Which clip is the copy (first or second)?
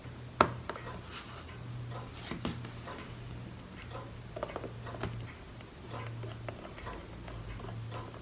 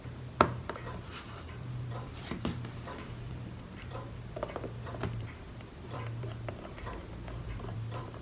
second